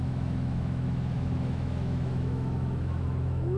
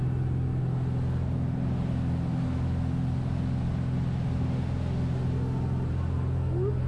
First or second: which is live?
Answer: second